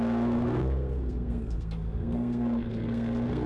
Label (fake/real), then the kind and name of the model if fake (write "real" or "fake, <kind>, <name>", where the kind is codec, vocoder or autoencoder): fake, codec, SNAC